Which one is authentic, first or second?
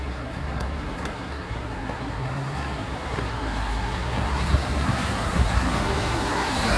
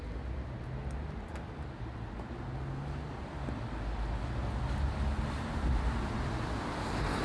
second